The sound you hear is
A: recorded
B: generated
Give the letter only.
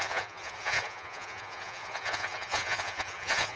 B